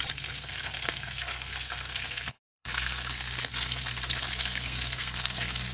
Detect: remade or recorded remade